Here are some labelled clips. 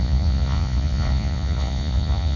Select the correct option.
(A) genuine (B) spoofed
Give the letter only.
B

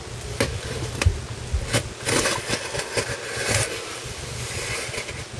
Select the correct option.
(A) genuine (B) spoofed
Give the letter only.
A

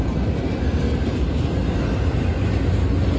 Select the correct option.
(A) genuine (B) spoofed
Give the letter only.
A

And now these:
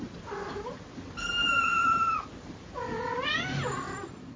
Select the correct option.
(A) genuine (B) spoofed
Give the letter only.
A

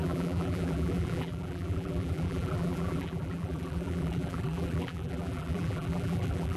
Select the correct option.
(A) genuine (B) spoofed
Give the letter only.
B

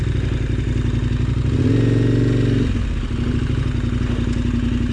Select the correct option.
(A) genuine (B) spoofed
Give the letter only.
A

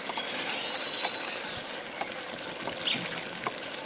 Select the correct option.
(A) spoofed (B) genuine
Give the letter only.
B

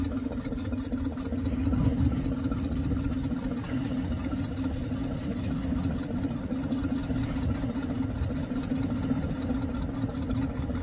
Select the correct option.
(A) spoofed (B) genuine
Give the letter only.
B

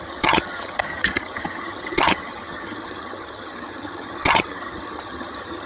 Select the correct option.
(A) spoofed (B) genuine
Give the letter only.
A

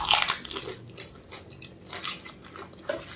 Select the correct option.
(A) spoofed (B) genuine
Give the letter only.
B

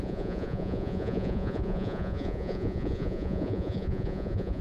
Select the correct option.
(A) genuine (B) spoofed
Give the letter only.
B